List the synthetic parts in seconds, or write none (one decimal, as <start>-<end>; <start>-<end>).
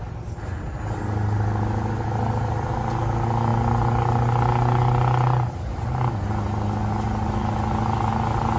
none